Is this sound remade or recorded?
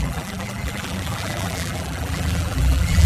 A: remade